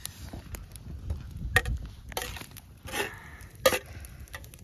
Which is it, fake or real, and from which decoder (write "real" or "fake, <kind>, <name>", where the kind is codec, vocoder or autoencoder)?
real